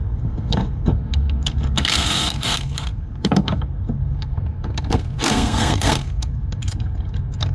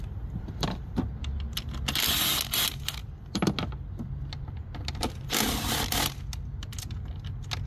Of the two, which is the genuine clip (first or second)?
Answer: second